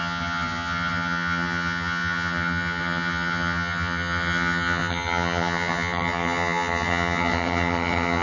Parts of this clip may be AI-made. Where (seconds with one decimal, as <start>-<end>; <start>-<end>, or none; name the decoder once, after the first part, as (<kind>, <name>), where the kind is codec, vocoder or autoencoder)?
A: 0.0-8.2 (vocoder, HiFi-GAN)